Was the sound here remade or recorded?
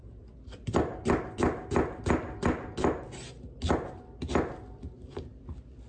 recorded